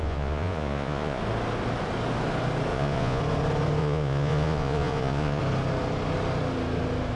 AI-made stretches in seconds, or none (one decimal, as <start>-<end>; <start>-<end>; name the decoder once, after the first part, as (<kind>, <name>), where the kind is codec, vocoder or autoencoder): 0.0-1.2 (vocoder, Vocos); 2.7-3.2; 3.8-5.4